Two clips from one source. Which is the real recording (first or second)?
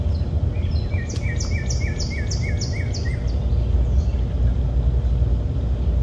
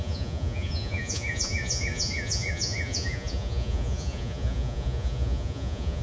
first